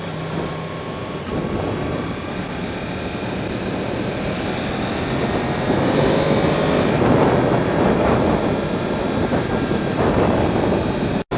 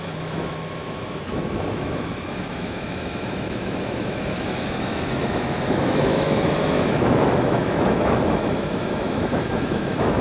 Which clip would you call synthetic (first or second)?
second